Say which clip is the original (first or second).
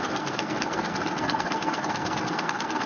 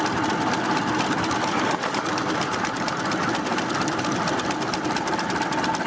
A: second